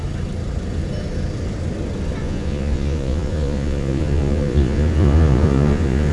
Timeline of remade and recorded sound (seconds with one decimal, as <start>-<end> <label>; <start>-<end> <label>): 0.0-2.2 recorded; 2.2-6.1 remade